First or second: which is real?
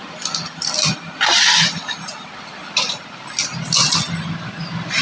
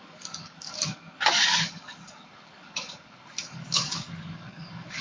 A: first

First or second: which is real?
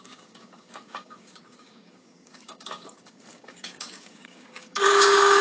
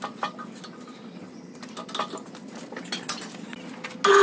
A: second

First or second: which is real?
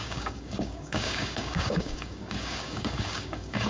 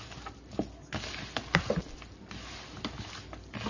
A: second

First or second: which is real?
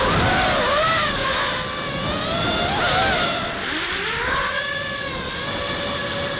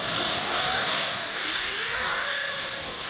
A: first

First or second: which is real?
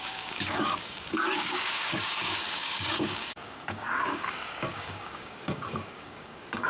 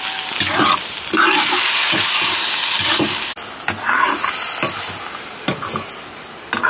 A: second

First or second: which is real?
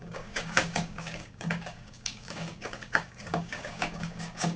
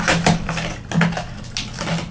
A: second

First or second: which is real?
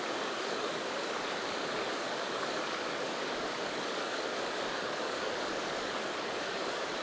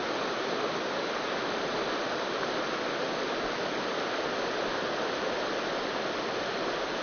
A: second